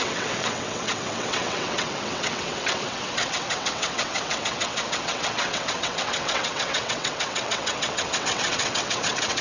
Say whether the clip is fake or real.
fake